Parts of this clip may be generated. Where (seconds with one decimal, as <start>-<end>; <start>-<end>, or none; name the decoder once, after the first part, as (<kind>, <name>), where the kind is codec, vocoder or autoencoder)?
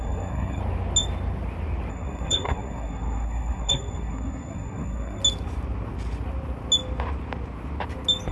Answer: 0.0-0.6 (codec, SNAC); 1.9-5.2